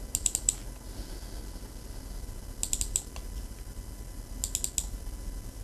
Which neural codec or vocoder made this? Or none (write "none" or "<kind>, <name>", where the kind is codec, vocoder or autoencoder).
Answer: none